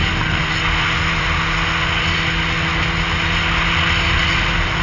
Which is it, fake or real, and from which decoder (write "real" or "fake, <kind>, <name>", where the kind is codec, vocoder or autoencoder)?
real